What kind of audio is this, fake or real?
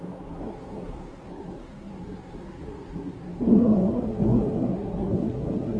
fake